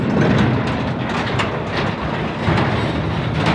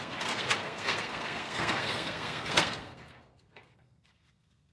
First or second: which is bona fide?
first